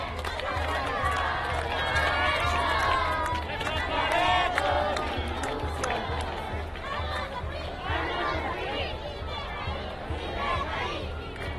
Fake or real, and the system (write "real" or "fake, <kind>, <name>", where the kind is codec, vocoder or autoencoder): real